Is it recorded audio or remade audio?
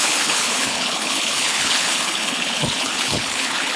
remade